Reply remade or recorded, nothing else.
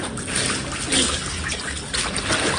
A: recorded